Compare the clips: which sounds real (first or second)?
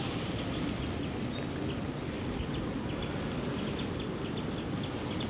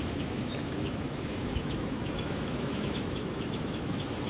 first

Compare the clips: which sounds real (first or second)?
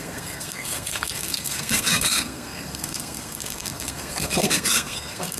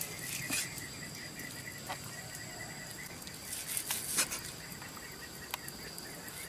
second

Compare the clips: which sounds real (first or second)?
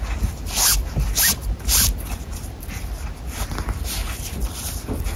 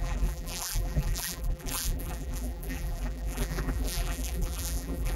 first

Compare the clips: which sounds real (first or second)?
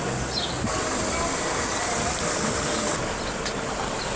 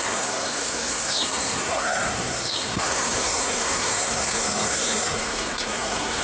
first